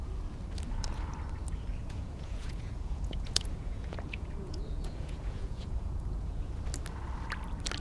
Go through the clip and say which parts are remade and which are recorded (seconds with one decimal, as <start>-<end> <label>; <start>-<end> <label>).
0.0-1.8 recorded; 1.8-6.5 remade; 6.5-7.8 recorded